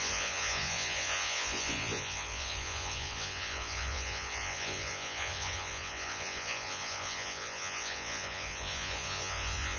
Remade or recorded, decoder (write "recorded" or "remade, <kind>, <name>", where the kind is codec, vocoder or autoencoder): remade, vocoder, Vocos